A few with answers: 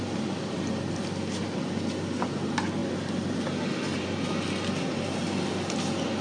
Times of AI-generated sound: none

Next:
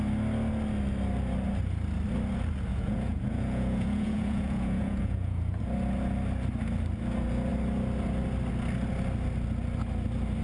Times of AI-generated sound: 2.7-5.6